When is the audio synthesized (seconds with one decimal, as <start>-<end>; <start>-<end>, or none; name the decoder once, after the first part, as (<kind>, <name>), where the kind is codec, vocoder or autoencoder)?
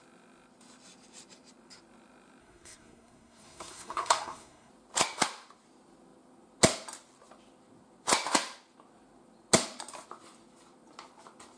2.4-4.7 (codec, SNAC)